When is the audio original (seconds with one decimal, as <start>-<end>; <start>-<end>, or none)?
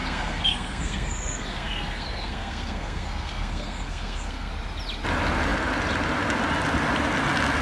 4.5-7.6